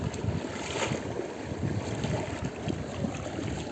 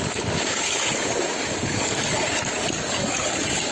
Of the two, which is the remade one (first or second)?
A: second